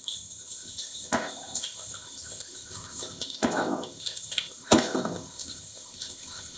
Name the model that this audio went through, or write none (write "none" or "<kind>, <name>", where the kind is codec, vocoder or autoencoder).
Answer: codec, ZipCodec